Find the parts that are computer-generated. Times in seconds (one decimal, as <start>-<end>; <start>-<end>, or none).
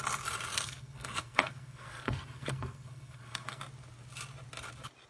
0.5-3.6